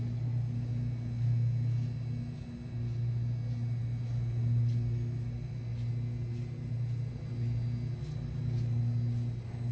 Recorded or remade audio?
recorded